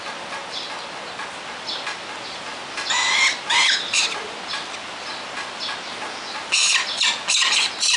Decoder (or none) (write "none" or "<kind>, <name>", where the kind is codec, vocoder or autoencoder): none